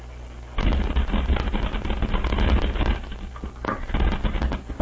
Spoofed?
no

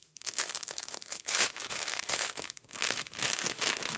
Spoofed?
yes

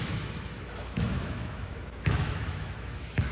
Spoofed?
yes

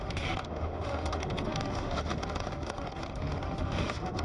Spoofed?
yes